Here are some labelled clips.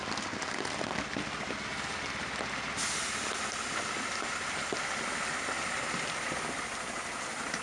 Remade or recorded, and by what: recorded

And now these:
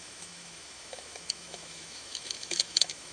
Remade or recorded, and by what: remade, autoencoder, DAC-VAE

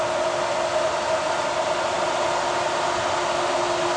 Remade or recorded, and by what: recorded